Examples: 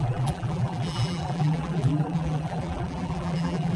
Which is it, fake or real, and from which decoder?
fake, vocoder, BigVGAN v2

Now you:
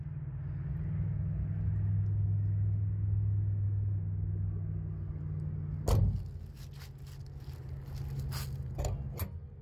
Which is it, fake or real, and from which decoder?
real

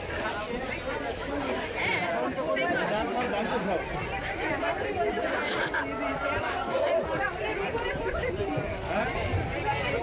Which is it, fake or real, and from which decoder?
real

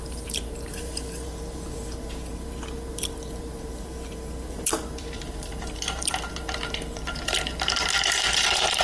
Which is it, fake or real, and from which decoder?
fake, vocoder, BigVGAN v2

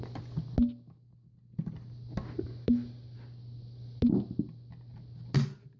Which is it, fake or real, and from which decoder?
real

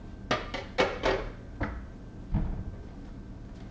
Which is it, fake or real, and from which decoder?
real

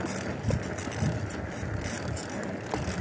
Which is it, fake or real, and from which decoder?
fake, vocoder, BigVGAN v2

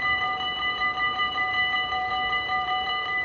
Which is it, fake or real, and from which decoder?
fake, vocoder, BigVGAN v2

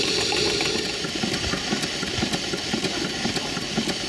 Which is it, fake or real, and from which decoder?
fake, vocoder, BigVGAN v2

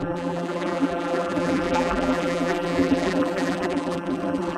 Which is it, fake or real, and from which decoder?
fake, vocoder, BigVGAN v2